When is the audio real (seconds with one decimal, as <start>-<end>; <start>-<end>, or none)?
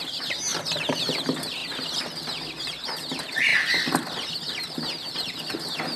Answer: 0.0-6.0